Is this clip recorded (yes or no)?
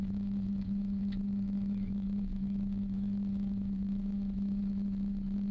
no